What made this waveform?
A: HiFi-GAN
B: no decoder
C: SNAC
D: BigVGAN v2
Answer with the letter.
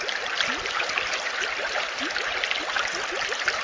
B